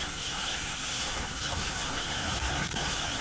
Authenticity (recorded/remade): remade